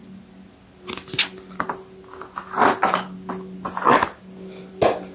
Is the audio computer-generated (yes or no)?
no